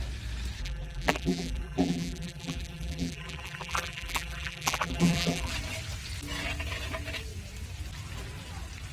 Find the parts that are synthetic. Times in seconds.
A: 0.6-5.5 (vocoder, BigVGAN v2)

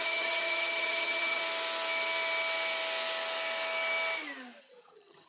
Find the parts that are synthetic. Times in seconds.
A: 0.0-1.4 (vocoder, HiFi-GAN); 4.6-5.3

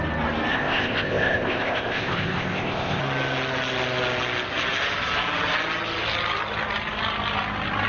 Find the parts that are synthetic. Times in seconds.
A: 0.5-3.0 (codec, ZipCodec)